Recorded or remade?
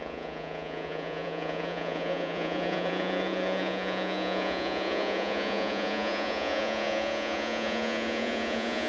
remade